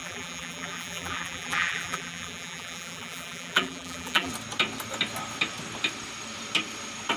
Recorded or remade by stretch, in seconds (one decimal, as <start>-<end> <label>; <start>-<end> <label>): 0.0-4.3 remade; 4.3-7.2 recorded